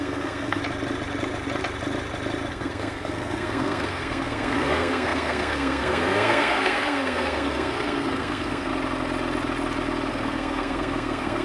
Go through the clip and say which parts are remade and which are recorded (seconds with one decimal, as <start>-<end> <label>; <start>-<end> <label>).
0.0-0.6 remade; 0.6-2.5 recorded; 2.5-8.7 remade; 8.7-10.1 recorded; 10.1-11.4 remade